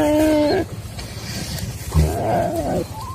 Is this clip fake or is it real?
real